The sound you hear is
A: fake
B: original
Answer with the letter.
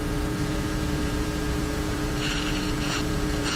A